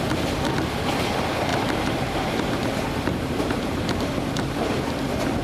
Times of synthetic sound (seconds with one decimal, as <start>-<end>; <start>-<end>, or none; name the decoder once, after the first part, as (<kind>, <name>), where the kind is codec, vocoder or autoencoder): 1.5-4.7 (vocoder, BigVGAN v2)